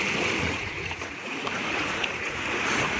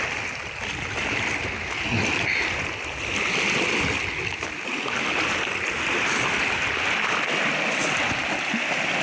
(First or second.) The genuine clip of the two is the second